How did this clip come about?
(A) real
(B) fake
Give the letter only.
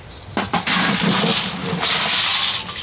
A